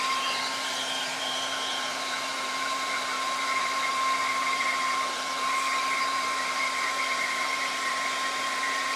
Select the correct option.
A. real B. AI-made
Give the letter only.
B